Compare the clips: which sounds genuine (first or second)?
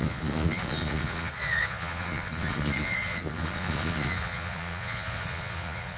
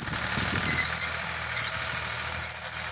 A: second